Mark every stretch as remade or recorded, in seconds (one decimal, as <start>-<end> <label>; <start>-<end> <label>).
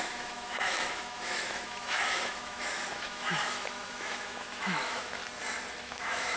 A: 0.0-5.2 remade; 5.2-5.8 recorded; 5.8-6.4 remade